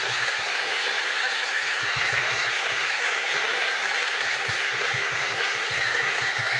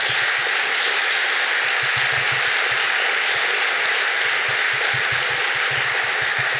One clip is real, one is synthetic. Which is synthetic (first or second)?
first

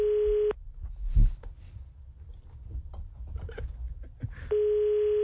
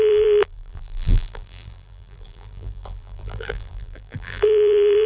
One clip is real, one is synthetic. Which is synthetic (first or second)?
second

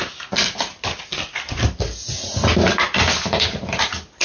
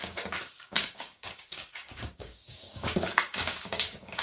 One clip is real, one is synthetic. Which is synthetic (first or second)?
second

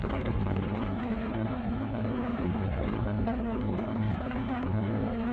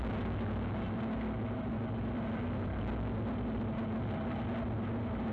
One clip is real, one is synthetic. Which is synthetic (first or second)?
first